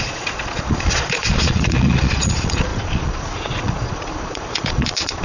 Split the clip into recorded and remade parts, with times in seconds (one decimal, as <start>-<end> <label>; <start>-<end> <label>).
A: 0.0-5.2 remade

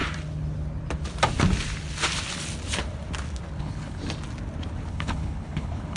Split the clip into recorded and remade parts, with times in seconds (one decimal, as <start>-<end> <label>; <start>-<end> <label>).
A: 0.0-3.6 recorded; 3.6-4.0 remade; 4.0-4.9 recorded; 4.9-6.0 remade

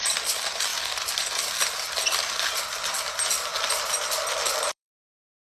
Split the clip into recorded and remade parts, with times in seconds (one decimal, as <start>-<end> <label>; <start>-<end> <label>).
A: 0.0-5.6 remade